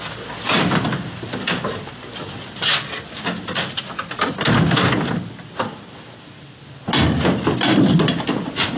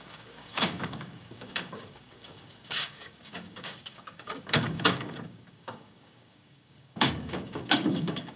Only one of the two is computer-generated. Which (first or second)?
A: second